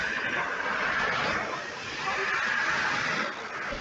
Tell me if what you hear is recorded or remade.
recorded